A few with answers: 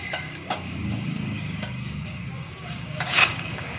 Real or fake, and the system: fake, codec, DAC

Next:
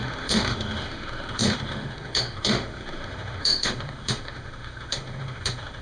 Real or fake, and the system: fake, autoencoder, DAC-VAE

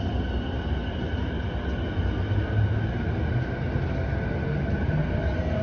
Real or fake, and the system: real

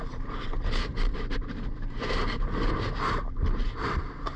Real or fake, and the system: fake, vocoder, BigVGAN v2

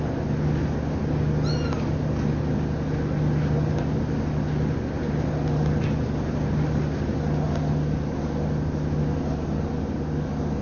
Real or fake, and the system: real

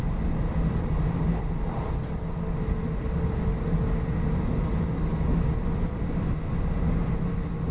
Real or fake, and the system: real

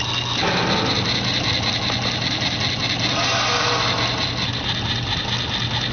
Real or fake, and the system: real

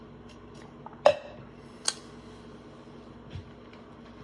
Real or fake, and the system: real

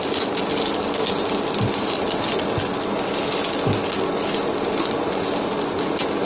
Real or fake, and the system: real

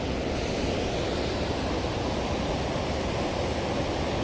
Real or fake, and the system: real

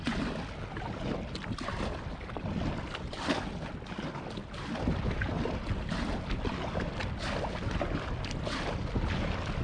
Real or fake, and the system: real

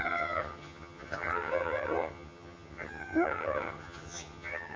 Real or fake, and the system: fake, vocoder, HiFi-GAN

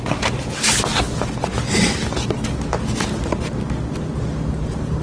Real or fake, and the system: real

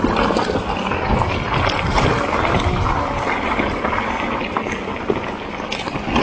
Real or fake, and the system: real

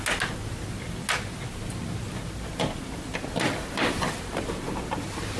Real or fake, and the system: real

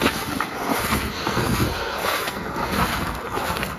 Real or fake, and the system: fake, codec, SNAC